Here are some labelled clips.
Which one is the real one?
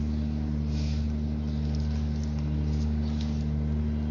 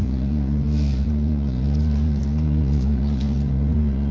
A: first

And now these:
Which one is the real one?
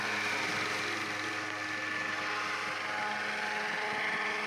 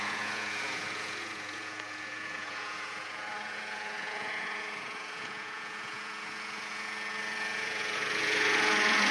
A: first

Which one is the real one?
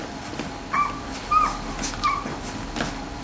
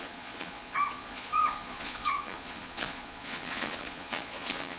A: first